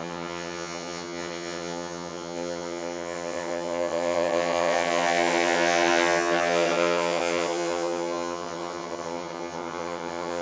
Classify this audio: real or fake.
fake